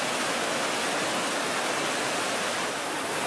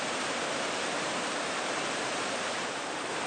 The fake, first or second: second